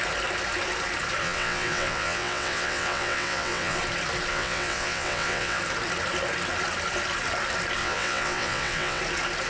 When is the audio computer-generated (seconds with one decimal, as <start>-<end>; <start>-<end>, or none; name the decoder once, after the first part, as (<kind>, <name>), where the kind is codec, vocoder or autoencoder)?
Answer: 1.2-3.8 (vocoder, WaveNeXt); 4.3-5.6; 7.8-9.0